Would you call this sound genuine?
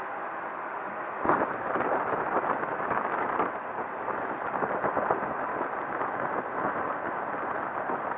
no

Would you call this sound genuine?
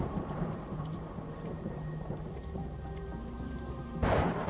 no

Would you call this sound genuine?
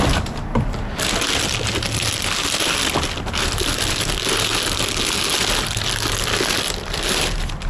yes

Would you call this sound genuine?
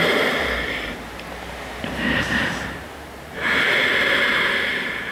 no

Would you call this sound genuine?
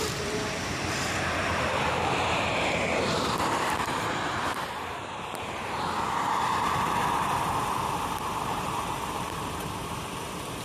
no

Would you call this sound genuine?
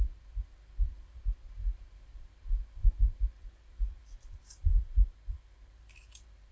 no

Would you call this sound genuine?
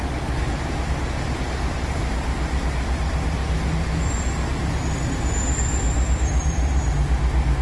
no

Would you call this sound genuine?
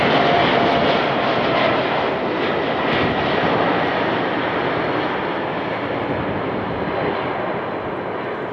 yes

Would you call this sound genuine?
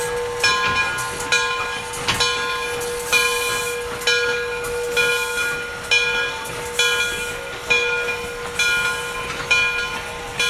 yes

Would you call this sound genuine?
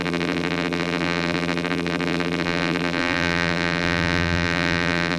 no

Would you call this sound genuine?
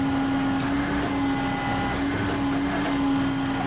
yes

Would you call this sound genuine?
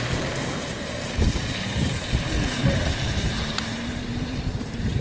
no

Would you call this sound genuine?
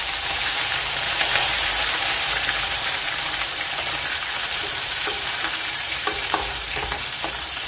no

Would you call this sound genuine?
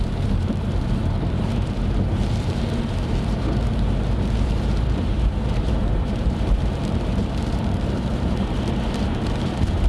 no